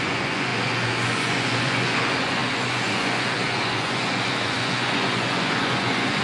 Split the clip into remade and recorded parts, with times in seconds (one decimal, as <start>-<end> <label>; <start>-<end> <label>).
0.0-6.2 remade